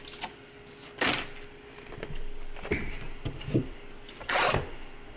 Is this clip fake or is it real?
real